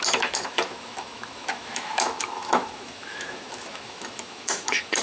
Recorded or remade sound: remade